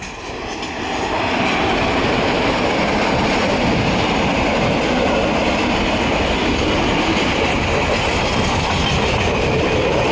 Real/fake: real